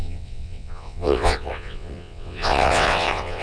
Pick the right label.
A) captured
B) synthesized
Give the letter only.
B